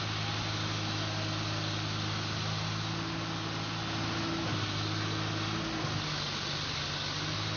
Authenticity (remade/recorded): recorded